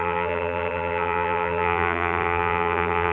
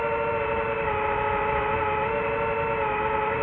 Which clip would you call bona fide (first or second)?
second